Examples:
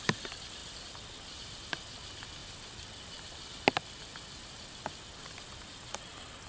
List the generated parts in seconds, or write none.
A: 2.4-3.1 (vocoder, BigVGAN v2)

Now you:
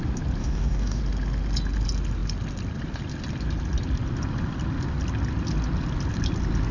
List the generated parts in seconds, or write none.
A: 0.4-1.0 (codec, DAC)

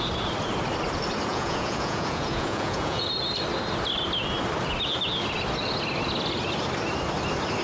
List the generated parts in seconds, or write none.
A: 1.3-3.0 (vocoder, Vocos)